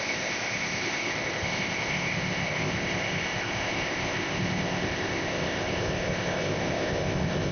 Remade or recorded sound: remade